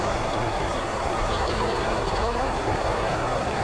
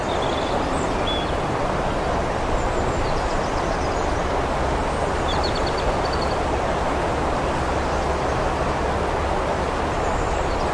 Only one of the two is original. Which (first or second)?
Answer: second